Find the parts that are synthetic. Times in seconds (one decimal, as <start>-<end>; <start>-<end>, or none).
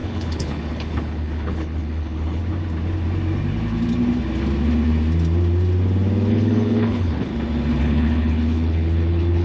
0.0-2.4; 6.3-7.3; 7.8-9.4